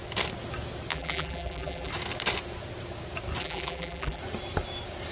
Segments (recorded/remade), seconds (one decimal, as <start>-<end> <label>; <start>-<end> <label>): 0.0-0.9 recorded; 0.9-1.9 remade; 1.9-3.4 recorded; 3.4-4.2 remade; 4.2-5.1 recorded